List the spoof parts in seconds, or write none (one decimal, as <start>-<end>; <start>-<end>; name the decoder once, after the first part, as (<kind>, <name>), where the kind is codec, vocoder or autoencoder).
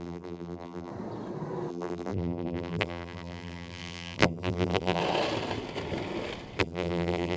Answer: 0.0-0.9 (vocoder, BigVGAN v2); 1.7-5.0; 6.6-7.4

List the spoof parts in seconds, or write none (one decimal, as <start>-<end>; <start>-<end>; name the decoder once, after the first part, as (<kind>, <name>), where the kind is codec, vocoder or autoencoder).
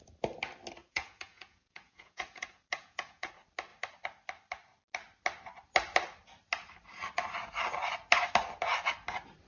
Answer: 0.8-3.3 (vocoder, Vocos)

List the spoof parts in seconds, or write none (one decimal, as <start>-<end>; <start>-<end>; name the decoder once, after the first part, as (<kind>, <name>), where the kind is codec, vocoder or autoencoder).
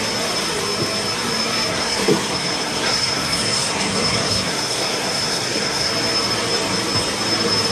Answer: 1.7-5.9 (codec, SNAC)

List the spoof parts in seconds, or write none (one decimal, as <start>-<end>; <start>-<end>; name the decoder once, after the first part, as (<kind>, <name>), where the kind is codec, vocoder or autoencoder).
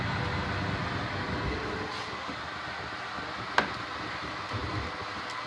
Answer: 4.6-5.5 (vocoder, BigVGAN v2)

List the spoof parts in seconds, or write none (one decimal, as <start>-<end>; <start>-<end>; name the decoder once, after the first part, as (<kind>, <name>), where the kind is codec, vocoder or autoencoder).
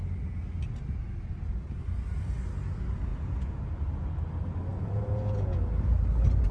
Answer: 3.1-3.6 (vocoder, Vocos); 4.7-5.6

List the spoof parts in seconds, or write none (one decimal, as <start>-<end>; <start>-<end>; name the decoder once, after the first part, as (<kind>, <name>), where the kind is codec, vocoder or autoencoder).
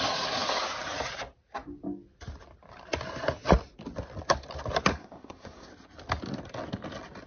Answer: 4.9-5.7 (codec, SNAC)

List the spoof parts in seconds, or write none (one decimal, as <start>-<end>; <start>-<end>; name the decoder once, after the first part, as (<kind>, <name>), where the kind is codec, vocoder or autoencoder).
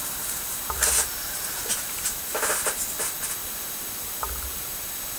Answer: 1.2-2.8 (vocoder, BigVGAN v2); 3.4-4.8